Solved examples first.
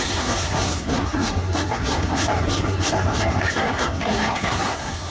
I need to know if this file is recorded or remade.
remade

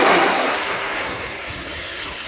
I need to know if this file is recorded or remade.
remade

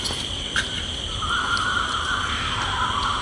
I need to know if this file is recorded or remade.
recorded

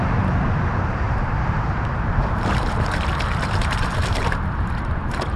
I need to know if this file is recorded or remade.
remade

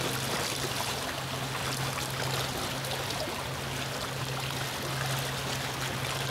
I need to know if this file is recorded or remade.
recorded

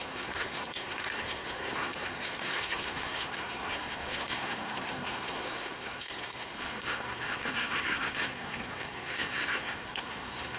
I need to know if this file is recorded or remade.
remade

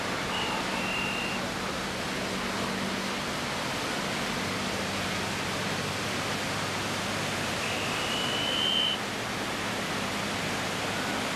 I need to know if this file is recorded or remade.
recorded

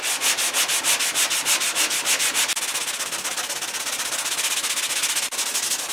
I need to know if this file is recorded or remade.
recorded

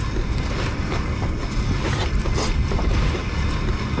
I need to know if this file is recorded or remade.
recorded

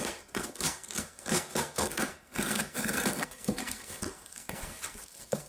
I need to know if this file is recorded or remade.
remade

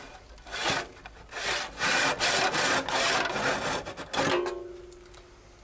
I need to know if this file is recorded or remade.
recorded